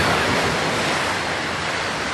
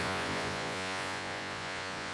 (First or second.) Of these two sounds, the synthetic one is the second